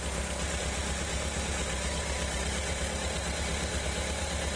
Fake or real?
fake